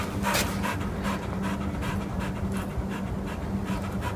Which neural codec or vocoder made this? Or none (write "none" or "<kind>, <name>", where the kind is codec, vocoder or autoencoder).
none